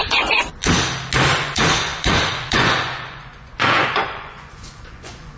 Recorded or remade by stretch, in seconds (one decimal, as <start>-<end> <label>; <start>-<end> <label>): 0.0-0.5 remade; 0.5-1.2 recorded; 1.2-5.4 remade